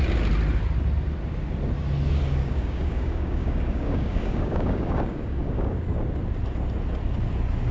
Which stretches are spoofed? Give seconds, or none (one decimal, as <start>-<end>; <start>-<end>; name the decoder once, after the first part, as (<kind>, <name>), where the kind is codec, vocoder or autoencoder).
2.4-5.8 (codec, DAC)